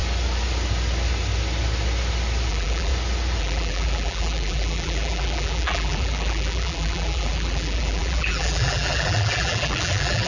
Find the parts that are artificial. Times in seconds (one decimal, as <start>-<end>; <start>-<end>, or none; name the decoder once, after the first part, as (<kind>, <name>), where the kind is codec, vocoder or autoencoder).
2.5-2.9 (vocoder, BigVGAN v2); 3.4-10.3